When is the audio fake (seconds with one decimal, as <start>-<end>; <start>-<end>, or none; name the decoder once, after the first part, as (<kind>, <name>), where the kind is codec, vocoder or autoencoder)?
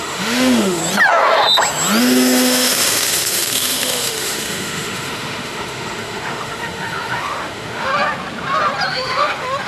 0.0-0.8 (autoencoder, DAC-VAE); 2.0-7.9; 8.9-9.7